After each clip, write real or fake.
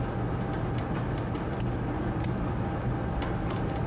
real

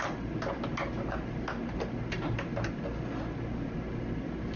real